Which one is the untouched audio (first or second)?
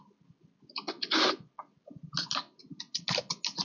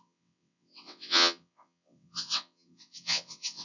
first